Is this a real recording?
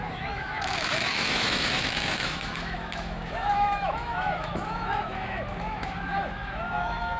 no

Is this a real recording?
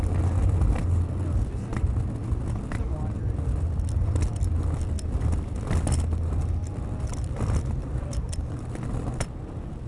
yes